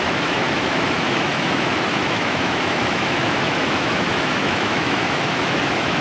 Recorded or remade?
remade